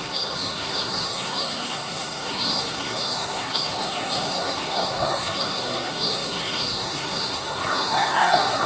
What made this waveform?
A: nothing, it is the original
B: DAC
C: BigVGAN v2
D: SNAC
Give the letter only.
D